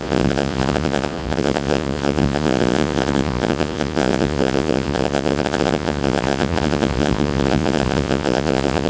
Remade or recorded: remade